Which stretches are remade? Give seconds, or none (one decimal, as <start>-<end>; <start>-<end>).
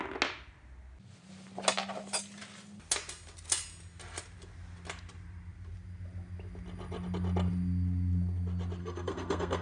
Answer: 8.8-9.6